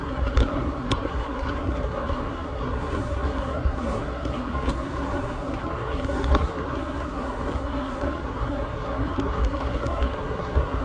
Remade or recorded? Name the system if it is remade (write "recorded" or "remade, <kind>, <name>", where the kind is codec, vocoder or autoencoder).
remade, codec, SNAC